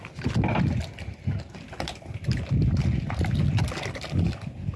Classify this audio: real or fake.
real